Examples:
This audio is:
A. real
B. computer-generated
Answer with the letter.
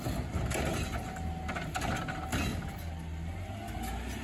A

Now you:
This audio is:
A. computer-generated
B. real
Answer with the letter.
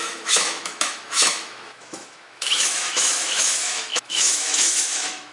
A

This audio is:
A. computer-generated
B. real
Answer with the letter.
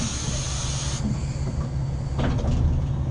B